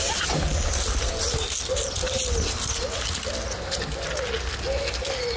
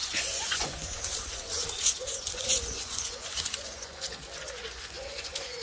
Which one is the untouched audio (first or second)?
first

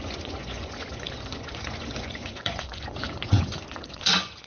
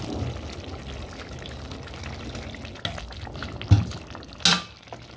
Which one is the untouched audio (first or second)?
second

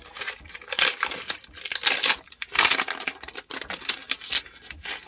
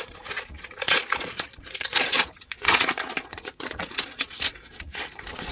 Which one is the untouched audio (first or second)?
first